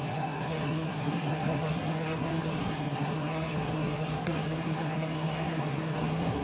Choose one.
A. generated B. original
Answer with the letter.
A